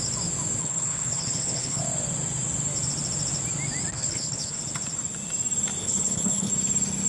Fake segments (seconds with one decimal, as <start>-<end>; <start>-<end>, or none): 0.6-1.8; 3.9-4.6; 5.8-6.5